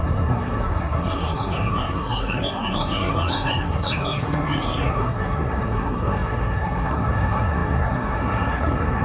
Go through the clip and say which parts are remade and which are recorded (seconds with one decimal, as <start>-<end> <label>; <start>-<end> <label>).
0.0-9.0 remade